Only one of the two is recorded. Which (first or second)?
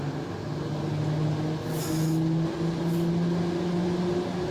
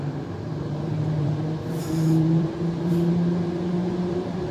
first